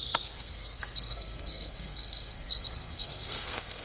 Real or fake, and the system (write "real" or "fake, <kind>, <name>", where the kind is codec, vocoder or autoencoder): fake, codec, SNAC